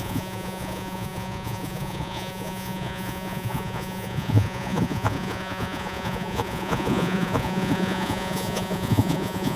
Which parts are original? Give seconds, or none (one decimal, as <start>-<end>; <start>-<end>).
none